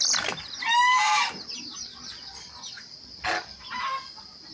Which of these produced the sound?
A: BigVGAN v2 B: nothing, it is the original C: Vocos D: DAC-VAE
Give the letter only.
A